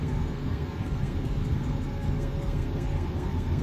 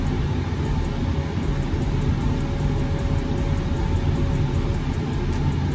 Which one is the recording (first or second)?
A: second